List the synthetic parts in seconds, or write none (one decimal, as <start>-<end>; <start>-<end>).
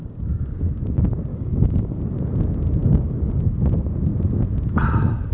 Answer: 0.0-0.6; 1.3-2.0; 2.8-3.4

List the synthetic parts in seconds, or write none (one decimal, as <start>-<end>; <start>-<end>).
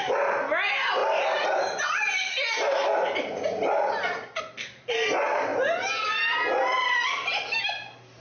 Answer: none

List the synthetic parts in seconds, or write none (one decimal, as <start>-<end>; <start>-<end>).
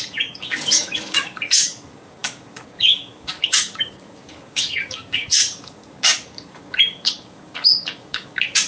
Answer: 0.0-8.7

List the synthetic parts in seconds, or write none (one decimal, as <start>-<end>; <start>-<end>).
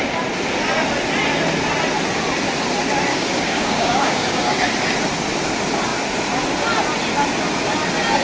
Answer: 3.1-4.4